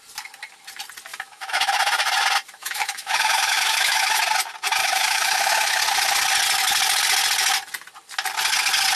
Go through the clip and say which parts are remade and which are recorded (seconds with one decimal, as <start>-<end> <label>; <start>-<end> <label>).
0.0-1.1 recorded; 1.1-1.7 remade; 1.7-2.6 recorded; 2.6-4.2 remade; 4.2-4.8 recorded; 4.8-5.8 remade; 5.8-9.0 recorded